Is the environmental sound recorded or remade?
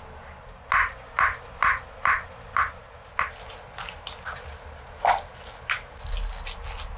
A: recorded